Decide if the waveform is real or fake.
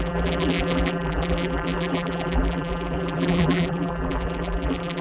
fake